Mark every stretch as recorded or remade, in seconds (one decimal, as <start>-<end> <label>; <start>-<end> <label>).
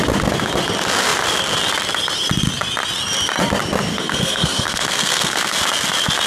0.0-3.9 recorded; 3.9-5.6 remade; 5.6-6.3 recorded